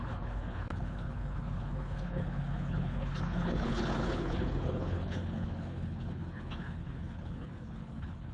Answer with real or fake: fake